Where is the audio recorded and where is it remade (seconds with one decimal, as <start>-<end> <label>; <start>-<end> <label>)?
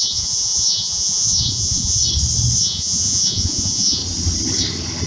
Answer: 0.0-2.0 remade; 2.0-2.6 recorded; 2.6-4.0 remade; 4.0-5.1 recorded